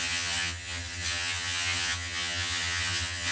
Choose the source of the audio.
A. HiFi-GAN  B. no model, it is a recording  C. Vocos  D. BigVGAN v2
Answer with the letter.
A